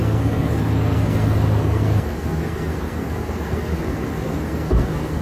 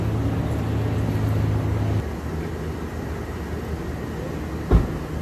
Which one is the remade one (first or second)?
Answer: first